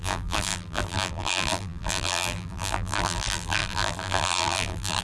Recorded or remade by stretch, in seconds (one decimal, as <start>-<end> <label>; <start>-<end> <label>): 0.0-5.0 remade